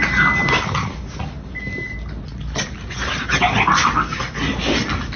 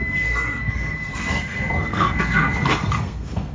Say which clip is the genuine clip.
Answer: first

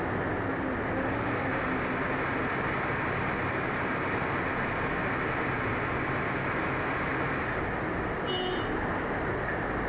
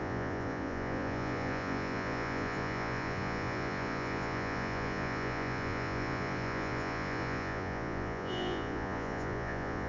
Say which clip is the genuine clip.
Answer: first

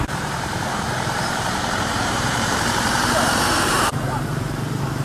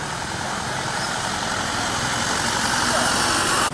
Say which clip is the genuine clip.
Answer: second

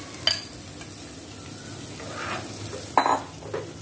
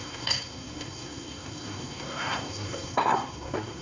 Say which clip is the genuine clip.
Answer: first